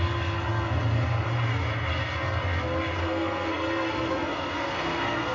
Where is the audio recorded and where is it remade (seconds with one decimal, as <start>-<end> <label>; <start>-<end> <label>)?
0.0-3.0 recorded; 3.0-5.3 remade